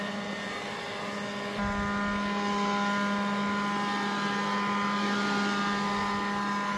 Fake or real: real